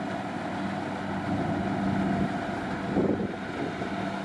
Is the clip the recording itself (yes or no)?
yes